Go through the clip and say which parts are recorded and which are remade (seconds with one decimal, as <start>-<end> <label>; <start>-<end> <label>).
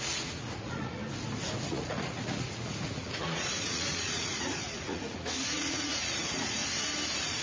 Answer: 0.0-1.0 remade; 1.0-1.6 recorded; 1.6-6.6 remade; 6.6-7.4 recorded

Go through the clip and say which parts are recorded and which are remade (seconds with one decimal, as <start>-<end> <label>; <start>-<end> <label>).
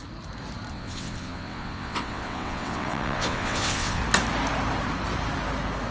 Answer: 0.0-0.7 recorded; 0.7-4.0 remade; 4.0-5.9 recorded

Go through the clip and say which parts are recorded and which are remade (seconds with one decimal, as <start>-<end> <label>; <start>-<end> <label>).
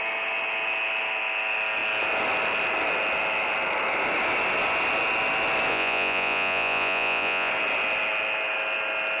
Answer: 0.0-5.7 recorded; 5.7-7.5 remade; 7.5-9.2 recorded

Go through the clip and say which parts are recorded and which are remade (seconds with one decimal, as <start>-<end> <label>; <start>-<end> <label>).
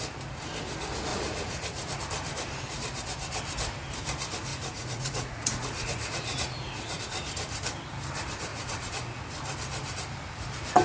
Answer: 0.0-1.1 recorded; 1.1-2.0 remade; 2.0-4.5 recorded; 4.5-7.0 remade; 7.0-8.5 recorded; 8.5-9.2 remade; 9.2-10.8 recorded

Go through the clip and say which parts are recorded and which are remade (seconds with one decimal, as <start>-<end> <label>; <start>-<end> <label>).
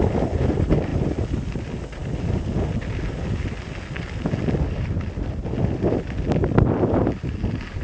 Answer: 0.0-7.8 recorded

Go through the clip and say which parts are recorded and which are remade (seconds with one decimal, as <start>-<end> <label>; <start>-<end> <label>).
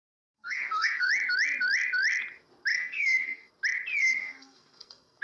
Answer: 0.0-1.1 remade; 1.1-2.7 recorded; 2.7-3.5 remade; 3.5-4.0 recorded; 4.0-5.2 remade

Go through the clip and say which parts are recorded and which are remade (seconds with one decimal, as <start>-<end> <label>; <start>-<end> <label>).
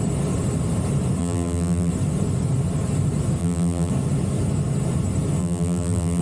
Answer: 0.0-1.2 recorded; 1.2-1.9 remade; 1.9-3.4 recorded; 3.4-3.9 remade; 3.9-5.4 recorded; 5.4-6.2 remade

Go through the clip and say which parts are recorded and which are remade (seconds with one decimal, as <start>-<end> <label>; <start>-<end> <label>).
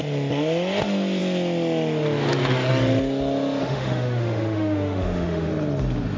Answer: 0.0-3.6 recorded; 3.6-5.5 remade; 5.5-6.2 recorded